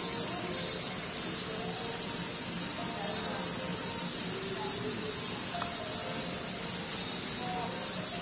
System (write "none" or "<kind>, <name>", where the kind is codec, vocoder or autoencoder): none